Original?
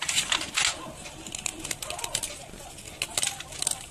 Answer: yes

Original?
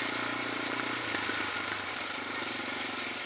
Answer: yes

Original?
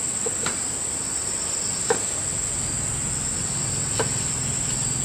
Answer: yes